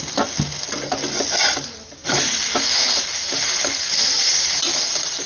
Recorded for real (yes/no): yes